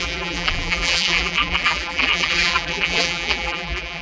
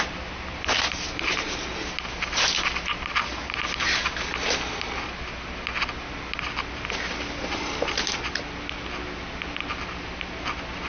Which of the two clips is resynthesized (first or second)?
first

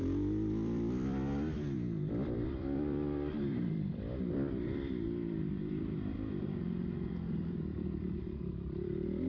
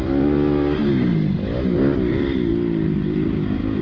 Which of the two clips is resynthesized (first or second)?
first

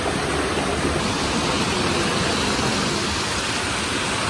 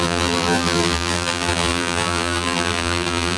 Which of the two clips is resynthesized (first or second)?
second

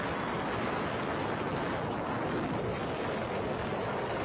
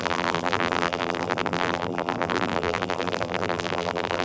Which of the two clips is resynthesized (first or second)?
second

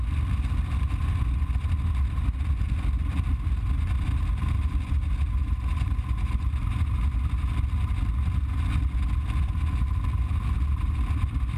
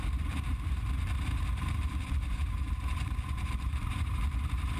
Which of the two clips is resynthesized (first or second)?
second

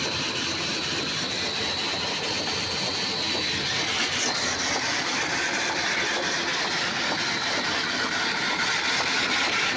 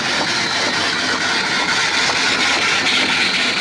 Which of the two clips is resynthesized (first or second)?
first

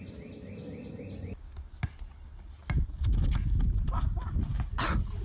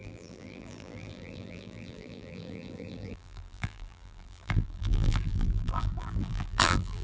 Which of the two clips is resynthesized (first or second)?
second